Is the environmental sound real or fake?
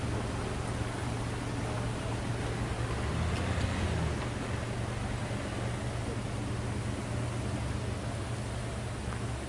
real